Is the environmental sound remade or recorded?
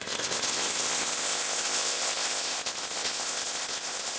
remade